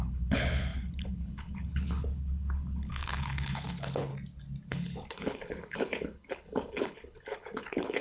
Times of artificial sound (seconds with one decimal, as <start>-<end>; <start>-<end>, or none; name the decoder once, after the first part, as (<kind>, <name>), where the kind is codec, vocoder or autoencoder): 0.0-4.1 (codec, HILCodec); 4.7-8.0